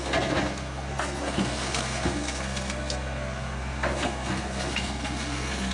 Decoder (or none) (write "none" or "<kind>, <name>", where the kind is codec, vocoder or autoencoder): codec, SNAC